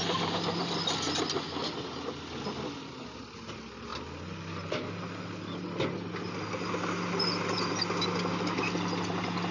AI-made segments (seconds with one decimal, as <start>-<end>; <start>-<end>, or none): none